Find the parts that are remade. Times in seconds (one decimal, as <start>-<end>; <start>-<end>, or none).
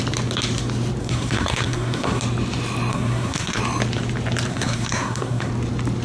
1.0-2.2; 2.9-3.6; 4.5-5.5